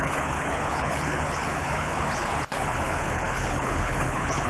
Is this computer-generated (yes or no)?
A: yes